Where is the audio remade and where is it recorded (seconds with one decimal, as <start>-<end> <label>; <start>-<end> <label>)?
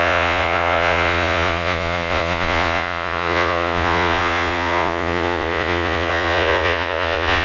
0.0-7.4 remade